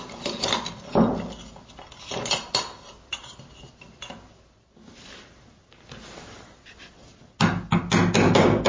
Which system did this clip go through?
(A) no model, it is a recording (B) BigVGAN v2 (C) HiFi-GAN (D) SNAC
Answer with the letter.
A